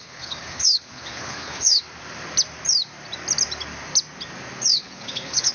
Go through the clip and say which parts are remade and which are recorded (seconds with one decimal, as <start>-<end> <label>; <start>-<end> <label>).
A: 0.0-1.8 remade; 1.8-4.7 recorded; 4.7-5.5 remade

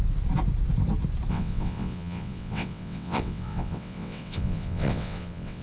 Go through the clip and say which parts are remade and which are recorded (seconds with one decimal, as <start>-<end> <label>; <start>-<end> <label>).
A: 0.0-1.3 recorded; 1.3-5.6 remade